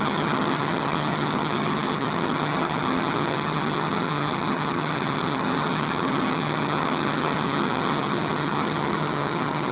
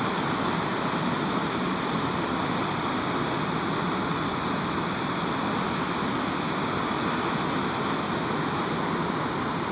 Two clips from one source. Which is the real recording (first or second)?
second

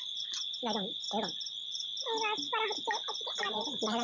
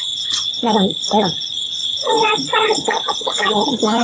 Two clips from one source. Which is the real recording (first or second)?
first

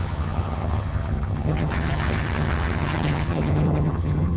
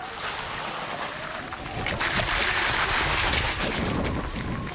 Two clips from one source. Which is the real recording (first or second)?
second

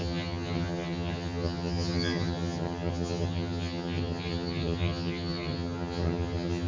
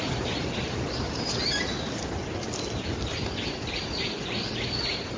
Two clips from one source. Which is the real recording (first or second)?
second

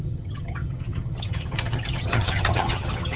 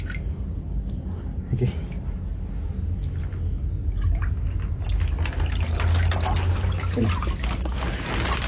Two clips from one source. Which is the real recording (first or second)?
second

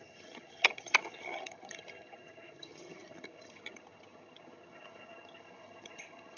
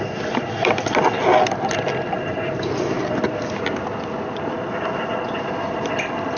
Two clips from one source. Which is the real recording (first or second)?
second